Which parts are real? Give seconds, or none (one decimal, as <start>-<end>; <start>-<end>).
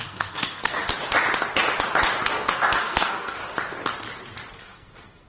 0.8-2.3; 3.4-4.5